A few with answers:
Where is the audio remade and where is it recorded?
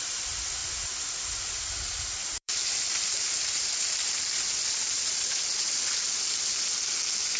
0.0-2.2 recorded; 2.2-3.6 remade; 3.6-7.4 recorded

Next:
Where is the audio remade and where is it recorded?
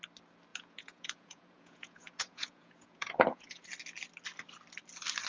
0.0-0.5 recorded; 0.5-3.7 remade; 3.7-5.3 recorded